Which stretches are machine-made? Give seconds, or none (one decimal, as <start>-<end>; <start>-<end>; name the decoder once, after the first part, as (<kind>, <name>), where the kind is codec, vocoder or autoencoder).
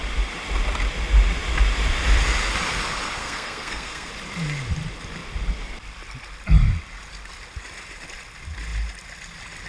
3.2-4.1 (codec, SNAC)